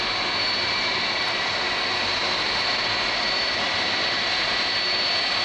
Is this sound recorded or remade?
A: recorded